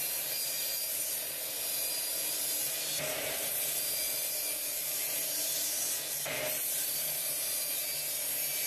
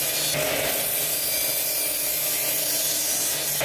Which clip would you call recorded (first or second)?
second